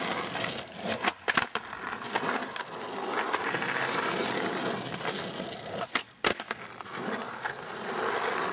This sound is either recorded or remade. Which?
recorded